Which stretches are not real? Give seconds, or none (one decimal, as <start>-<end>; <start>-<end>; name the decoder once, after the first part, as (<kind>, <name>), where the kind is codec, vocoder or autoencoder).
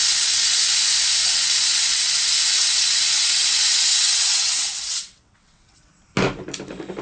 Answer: 0.0-0.6 (vocoder, WaveNeXt); 1.2-2.1; 2.5-5.9